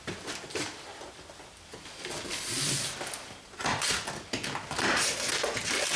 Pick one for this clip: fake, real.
real